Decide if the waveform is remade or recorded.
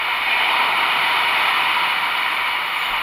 recorded